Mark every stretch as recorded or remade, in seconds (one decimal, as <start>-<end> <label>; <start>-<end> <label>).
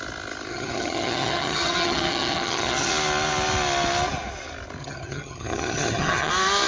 0.0-0.5 recorded; 0.5-2.9 remade; 2.9-4.8 recorded; 4.8-6.3 remade; 6.3-6.7 recorded